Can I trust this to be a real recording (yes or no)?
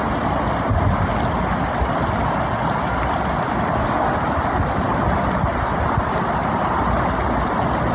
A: yes